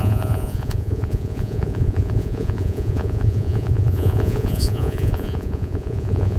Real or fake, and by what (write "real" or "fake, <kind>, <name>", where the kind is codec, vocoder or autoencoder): fake, vocoder, Vocos